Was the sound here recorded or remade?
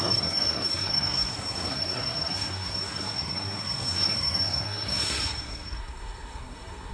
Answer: remade